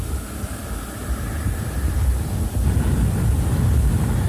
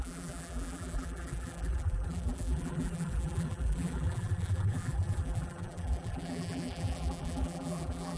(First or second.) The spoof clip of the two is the second